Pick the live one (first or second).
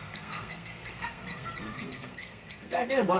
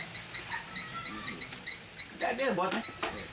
second